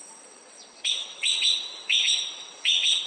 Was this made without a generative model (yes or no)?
no